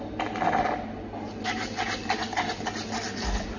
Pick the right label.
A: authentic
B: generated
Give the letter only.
A